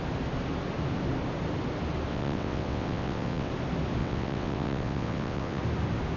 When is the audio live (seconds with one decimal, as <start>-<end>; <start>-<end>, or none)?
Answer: 0.0-2.1; 3.5-4.0; 5.6-6.2